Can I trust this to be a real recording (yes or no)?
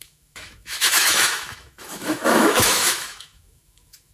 no